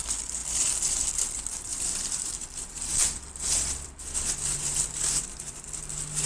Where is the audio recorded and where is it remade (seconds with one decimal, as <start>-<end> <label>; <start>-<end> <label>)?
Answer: 0.0-0.4 remade; 0.4-1.1 recorded; 1.1-6.3 remade